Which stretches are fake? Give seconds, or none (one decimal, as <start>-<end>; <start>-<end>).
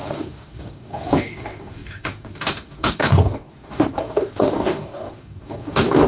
0.0-6.1